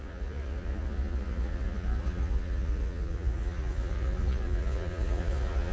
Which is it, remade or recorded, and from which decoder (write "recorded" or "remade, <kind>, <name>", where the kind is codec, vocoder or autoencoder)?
remade, vocoder, Vocos